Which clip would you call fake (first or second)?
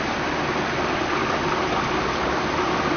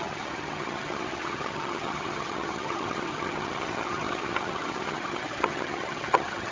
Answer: second